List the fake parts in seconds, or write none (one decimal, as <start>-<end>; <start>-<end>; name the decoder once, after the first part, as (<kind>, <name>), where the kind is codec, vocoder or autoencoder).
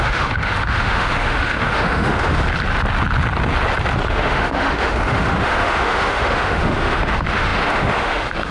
0.0-2.4 (autoencoder, DAC-VAE); 4.1-8.5